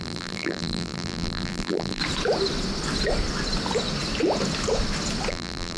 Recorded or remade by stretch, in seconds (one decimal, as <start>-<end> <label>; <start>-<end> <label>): 0.0-2.0 remade; 2.0-5.3 recorded; 5.3-5.8 remade